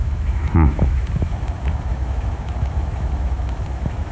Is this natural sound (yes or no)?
no